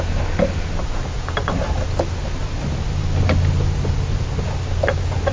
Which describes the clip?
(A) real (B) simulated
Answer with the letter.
A